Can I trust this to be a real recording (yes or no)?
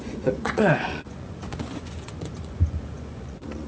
no